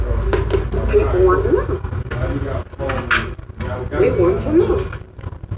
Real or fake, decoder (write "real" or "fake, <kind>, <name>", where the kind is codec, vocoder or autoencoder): real